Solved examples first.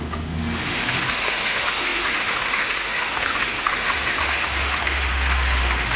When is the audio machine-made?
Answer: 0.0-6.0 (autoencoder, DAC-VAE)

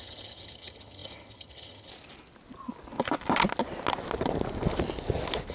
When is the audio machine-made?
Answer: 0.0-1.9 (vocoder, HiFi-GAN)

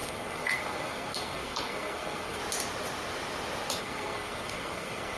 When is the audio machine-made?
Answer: 0.0-2.4 (codec, SNAC); 3.8-5.2

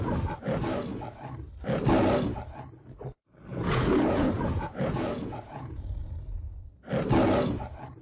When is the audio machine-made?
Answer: 3.5-6.7 (vocoder, Vocos)

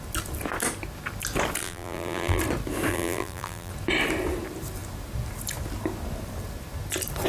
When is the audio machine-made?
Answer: 1.6-2.4 (vocoder, BigVGAN v2); 2.9-3.7

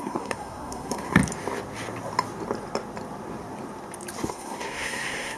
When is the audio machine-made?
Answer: 0.0-1.2 (codec, SNAC); 4.3-5.4

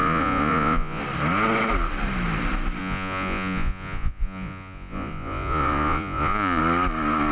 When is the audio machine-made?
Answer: 0.0-1.0 (vocoder, Vocos); 2.8-6.6

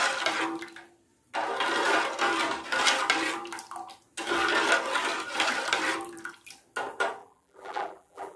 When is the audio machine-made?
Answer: 7.2-8.4 (vocoder, BigVGAN v2)